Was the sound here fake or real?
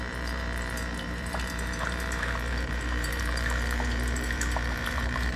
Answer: fake